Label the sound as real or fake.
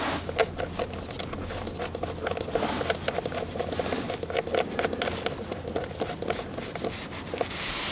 real